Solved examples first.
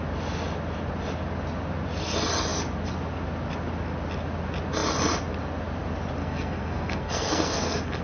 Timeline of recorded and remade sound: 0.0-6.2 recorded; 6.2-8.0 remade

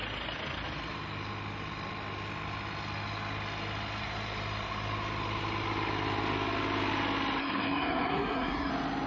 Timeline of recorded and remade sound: 0.0-7.4 recorded; 7.4-8.7 remade; 8.7-9.1 recorded

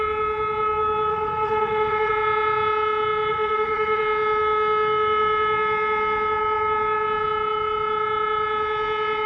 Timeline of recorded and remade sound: 0.0-1.1 recorded; 1.1-2.1 remade; 2.1-3.3 recorded; 3.3-4.0 remade; 4.0-9.3 recorded

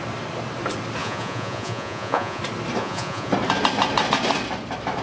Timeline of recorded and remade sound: 0.0-1.0 recorded; 1.0-2.4 remade; 2.4-2.8 recorded; 2.8-3.3 remade; 3.3-5.0 recorded

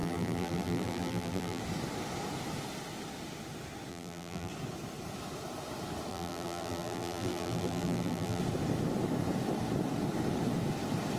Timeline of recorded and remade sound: 0.0-1.6 remade; 1.6-3.9 recorded; 3.9-4.5 remade; 4.5-6.1 recorded; 6.1-8.4 remade; 8.4-11.2 recorded

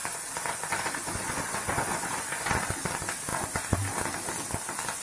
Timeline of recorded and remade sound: 0.0-2.5 remade; 2.5-5.0 recorded

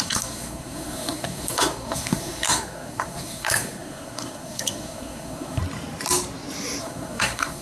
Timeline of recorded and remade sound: 0.0-5.6 remade; 5.6-6.8 recorded; 6.8-7.6 remade